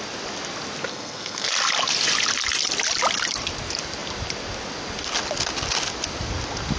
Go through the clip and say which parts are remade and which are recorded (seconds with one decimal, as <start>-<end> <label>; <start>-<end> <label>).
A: 0.0-0.9 recorded; 0.9-1.5 remade; 1.5-6.8 recorded